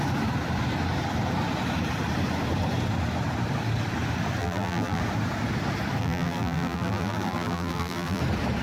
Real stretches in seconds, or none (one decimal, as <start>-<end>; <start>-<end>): 0.0-4.4; 5.0-6.0; 8.2-8.6